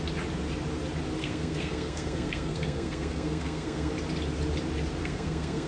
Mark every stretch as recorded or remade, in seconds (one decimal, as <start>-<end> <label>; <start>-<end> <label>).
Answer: 0.0-1.2 recorded; 1.2-3.9 remade; 3.9-5.0 recorded; 5.0-5.7 remade